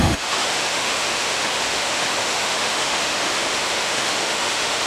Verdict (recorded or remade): remade